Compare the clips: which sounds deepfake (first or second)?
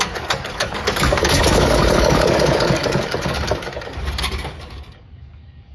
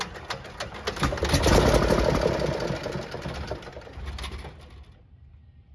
first